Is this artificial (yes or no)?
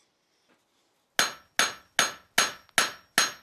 no